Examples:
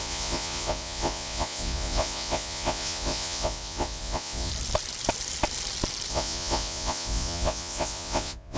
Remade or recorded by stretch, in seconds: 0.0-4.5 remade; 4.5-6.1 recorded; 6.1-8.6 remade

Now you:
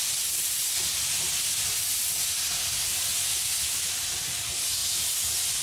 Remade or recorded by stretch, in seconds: 0.0-5.6 recorded

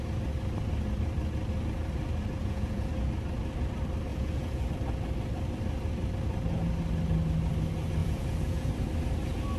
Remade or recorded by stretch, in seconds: 0.0-2.4 recorded; 2.4-2.9 remade; 2.9-4.1 recorded; 4.1-4.7 remade; 4.7-8.0 recorded; 8.0-8.7 remade; 8.7-9.6 recorded

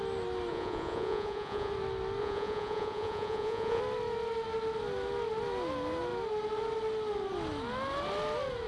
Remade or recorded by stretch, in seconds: 0.0-0.5 recorded; 0.5-1.7 remade; 1.7-2.2 recorded; 2.2-3.8 remade; 3.8-8.7 recorded

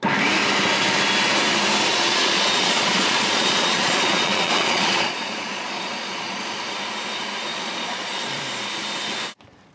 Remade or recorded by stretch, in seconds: 0.0-1.9 recorded; 1.9-6.4 remade; 6.4-7.5 recorded; 7.5-8.4 remade; 8.4-9.7 recorded

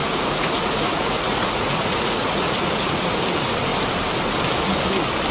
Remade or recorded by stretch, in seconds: 0.0-3.2 remade; 3.2-5.3 recorded